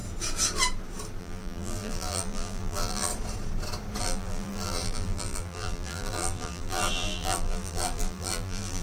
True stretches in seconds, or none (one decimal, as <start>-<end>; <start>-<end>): 0.0-1.2; 3.1-4.0

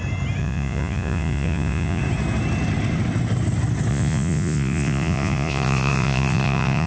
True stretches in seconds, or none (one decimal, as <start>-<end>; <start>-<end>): 0.0-0.4; 2.0-3.9

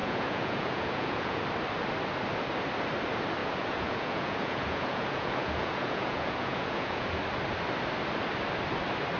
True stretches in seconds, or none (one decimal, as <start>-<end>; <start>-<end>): 1.4-3.4; 7.2-9.2

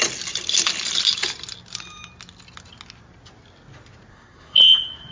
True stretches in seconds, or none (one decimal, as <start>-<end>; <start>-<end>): 0.0-4.1; 4.6-5.1

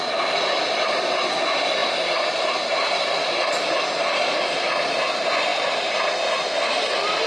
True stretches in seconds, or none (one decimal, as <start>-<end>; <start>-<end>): 0.0-7.3

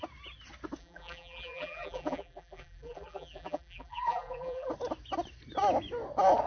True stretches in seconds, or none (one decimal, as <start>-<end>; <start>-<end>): 0.0-0.8; 4.7-6.5